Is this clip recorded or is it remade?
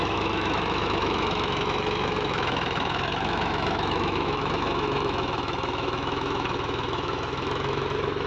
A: remade